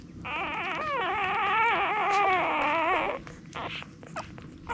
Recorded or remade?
recorded